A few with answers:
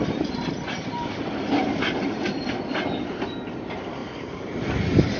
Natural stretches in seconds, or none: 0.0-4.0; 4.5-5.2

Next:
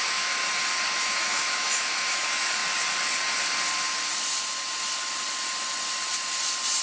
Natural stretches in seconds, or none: 0.4-1.0; 2.6-6.8

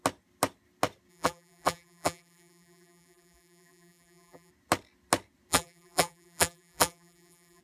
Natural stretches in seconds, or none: 0.0-1.1; 4.5-5.5

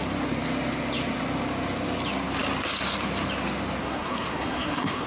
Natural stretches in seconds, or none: 0.0-3.8

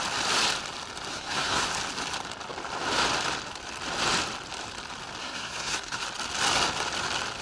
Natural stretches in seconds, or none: 0.0-1.1; 1.6-5.2; 6.0-7.4

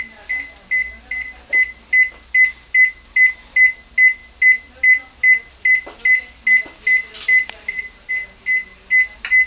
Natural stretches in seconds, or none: 0.0-9.5

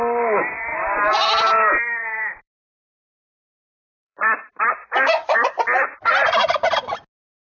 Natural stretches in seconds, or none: 0.0-0.7; 4.7-7.5